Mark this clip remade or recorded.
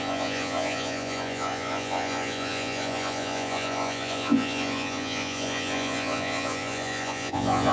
remade